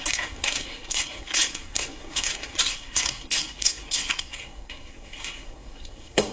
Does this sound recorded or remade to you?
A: remade